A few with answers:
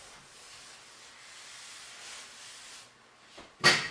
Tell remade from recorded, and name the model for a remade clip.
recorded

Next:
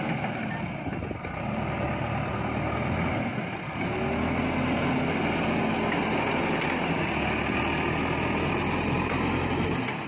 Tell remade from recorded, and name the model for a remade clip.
recorded